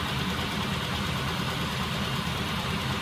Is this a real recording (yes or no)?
yes